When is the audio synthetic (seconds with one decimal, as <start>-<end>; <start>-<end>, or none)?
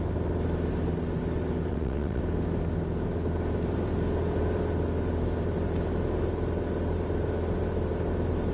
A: 1.7-2.2